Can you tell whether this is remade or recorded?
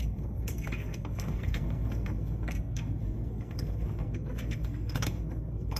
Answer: remade